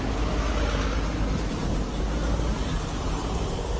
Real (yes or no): yes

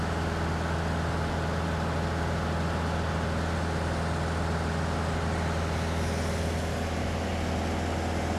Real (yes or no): yes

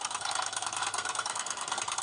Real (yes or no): no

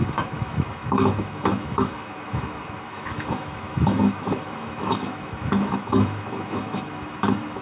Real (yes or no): no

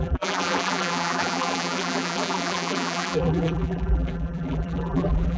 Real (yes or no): no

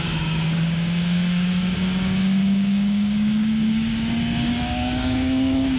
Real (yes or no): no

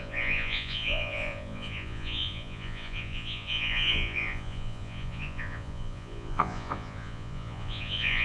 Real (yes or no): no